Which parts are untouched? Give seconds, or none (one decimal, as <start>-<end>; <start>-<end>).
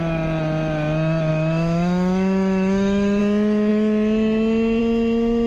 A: 0.0-1.3; 3.2-5.5